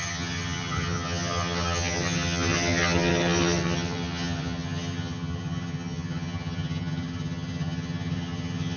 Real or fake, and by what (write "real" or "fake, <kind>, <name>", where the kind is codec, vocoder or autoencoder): fake, vocoder, HiFi-GAN